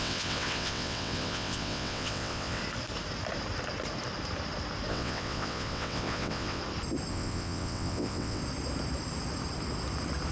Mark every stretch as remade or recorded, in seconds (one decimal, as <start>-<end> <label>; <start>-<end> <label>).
0.0-2.6 remade; 2.6-4.9 recorded; 4.9-6.6 remade; 6.6-7.1 recorded; 7.1-8.4 remade; 8.4-10.3 recorded